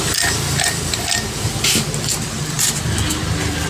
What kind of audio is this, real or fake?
real